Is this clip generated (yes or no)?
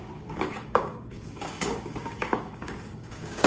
yes